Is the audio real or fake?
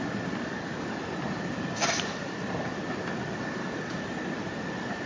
real